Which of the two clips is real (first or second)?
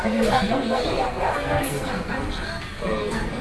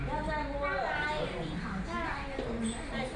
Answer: second